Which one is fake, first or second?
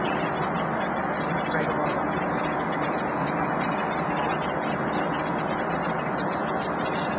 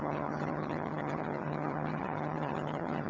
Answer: second